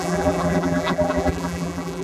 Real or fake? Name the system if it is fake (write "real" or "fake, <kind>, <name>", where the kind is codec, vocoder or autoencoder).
fake, vocoder, BigVGAN v2